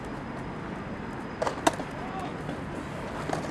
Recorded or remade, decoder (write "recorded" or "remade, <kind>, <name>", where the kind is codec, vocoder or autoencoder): recorded